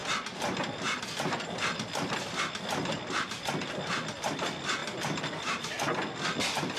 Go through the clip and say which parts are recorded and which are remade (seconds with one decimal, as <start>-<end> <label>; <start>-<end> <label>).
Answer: 0.0-6.8 recorded